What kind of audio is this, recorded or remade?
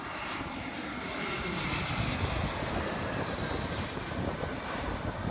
recorded